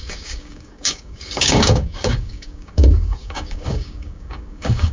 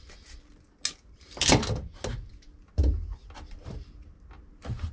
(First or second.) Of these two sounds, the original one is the second